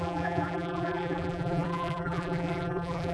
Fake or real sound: fake